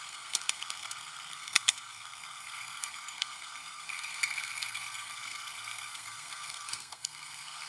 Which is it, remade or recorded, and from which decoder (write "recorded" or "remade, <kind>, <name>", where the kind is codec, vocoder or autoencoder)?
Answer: remade, codec, SNAC